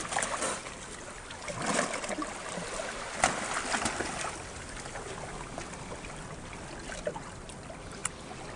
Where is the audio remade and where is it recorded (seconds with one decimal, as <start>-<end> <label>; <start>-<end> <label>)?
0.0-8.6 recorded